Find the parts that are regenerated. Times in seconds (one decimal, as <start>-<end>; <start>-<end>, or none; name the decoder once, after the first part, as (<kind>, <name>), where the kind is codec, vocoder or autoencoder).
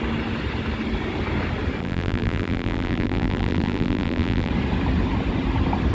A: 1.8-4.5 (vocoder, BigVGAN v2)